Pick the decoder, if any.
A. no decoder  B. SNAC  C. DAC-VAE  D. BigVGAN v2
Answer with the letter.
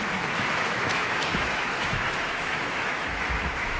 C